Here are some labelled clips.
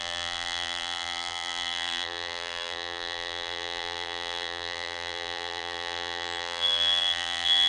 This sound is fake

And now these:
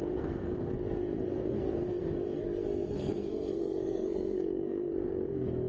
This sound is fake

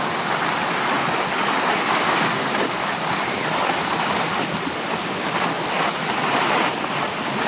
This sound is real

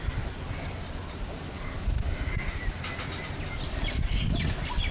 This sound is real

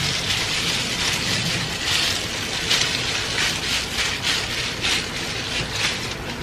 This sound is real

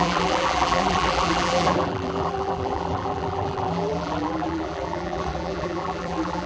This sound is fake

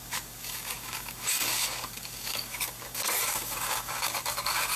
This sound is fake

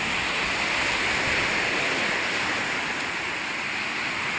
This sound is real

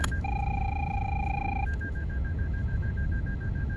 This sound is fake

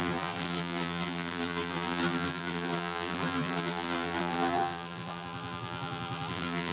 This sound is fake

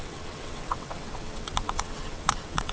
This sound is fake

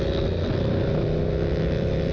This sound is real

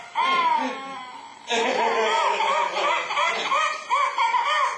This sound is real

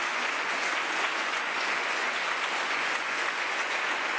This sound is fake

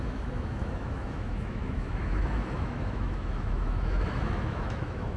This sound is fake